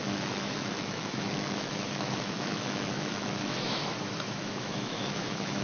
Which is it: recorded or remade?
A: remade